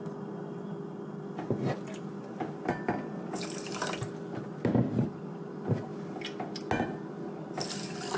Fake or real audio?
real